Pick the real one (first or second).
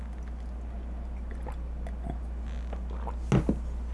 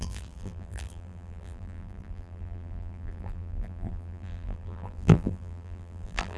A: first